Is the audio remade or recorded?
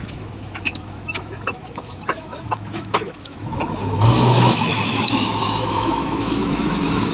remade